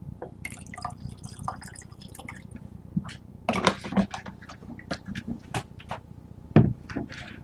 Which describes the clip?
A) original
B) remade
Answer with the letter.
A